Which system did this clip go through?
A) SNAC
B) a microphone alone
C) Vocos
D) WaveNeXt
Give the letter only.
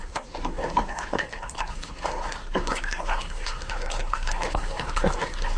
A